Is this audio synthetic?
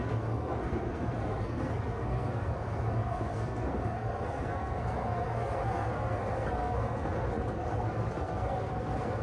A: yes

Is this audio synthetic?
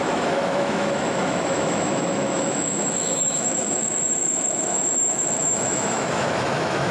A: yes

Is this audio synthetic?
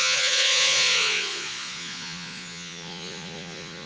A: yes